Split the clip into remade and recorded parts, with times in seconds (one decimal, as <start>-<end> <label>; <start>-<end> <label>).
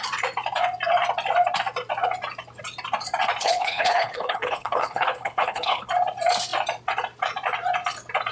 0.0-3.4 recorded; 3.4-5.9 remade; 5.9-8.3 recorded